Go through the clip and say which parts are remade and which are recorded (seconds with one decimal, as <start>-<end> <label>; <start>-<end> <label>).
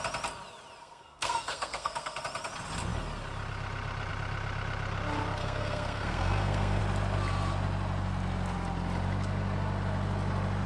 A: 0.0-0.8 recorded; 0.8-2.2 remade; 2.2-5.4 recorded; 5.4-6.8 remade; 6.8-10.7 recorded